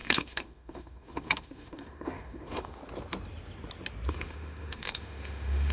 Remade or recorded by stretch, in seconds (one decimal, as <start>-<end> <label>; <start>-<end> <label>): 0.0-2.8 remade; 2.8-4.1 recorded; 4.1-5.7 remade

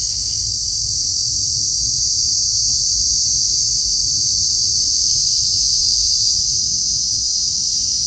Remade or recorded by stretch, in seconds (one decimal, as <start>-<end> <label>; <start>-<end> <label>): 0.0-2.3 remade; 2.3-2.8 recorded; 2.8-8.1 remade

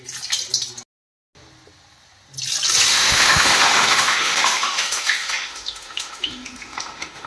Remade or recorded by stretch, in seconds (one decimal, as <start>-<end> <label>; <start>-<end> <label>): 0.0-2.9 recorded; 2.9-7.3 remade

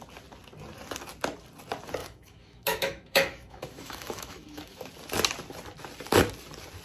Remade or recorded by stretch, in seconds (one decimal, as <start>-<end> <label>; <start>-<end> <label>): 0.0-2.0 recorded; 2.0-4.9 remade; 4.9-6.8 recorded

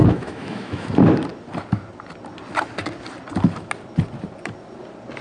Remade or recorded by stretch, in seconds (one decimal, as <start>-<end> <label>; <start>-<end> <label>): 0.0-0.9 remade; 0.9-5.2 recorded

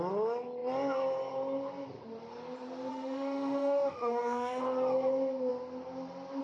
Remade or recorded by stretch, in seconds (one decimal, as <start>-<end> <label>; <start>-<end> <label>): 0.0-2.9 recorded; 2.9-4.6 remade; 4.6-6.4 recorded

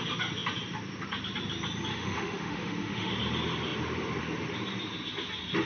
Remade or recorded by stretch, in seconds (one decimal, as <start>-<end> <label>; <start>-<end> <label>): 0.0-1.9 recorded; 1.9-3.1 remade; 3.1-5.7 recorded

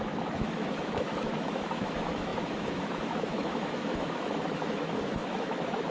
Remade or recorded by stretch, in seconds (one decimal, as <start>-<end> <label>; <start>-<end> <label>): 0.0-5.9 remade